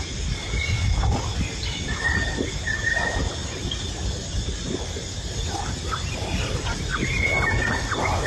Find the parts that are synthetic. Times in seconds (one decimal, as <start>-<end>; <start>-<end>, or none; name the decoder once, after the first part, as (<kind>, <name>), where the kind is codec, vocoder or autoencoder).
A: none